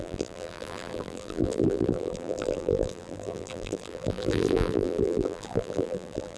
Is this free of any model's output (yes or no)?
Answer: no